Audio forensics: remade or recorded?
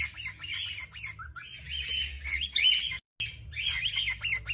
recorded